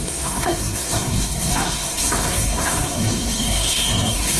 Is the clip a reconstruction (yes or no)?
yes